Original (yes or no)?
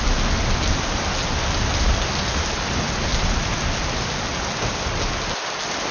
yes